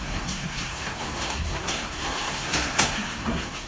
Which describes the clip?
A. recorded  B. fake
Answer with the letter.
B